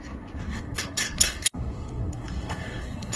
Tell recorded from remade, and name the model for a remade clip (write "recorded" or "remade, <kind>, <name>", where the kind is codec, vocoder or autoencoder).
remade, codec, SNAC